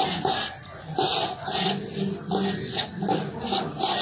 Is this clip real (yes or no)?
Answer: yes